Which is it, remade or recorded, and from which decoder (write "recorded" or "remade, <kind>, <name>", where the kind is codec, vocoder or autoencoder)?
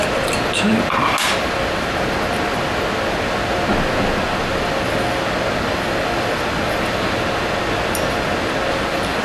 recorded